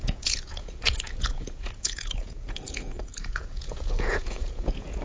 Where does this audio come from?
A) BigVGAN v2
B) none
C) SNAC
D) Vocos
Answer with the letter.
D